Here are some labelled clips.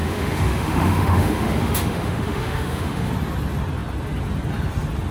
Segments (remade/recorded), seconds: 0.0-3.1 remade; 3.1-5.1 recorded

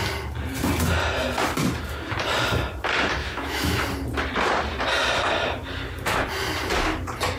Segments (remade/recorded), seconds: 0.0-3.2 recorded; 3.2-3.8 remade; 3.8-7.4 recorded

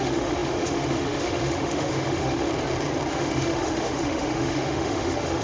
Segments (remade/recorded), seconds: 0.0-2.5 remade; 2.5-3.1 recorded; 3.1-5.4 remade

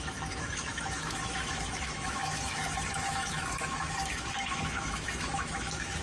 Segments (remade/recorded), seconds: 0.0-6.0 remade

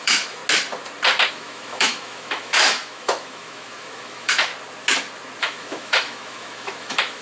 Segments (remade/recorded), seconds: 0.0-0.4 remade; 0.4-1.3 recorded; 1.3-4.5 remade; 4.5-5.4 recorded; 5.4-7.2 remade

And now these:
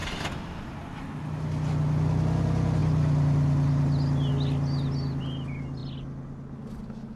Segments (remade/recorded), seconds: 0.0-7.2 recorded

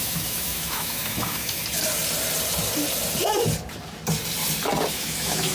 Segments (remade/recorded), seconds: 0.0-1.6 remade; 1.6-4.9 recorded; 4.9-5.5 remade